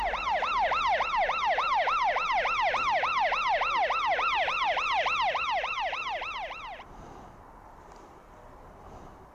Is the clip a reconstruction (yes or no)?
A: yes